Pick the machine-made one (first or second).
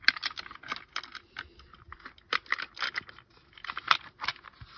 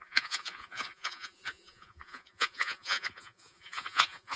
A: second